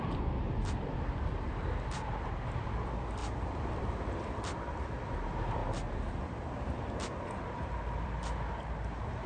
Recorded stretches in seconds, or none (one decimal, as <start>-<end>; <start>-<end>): 5.6-7.5